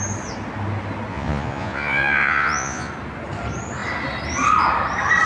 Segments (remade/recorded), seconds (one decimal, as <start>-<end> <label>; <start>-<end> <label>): 0.0-1.1 recorded; 1.1-2.9 remade; 2.9-5.3 recorded

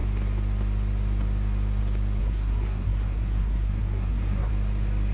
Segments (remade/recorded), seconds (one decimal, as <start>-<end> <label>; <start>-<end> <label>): 0.0-2.2 recorded; 2.2-4.5 remade; 4.5-5.1 recorded